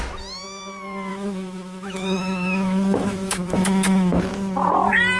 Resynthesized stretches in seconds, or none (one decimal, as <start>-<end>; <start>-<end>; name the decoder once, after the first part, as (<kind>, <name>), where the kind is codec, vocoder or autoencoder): 1.1-4.2 (autoencoder, DAC-VAE)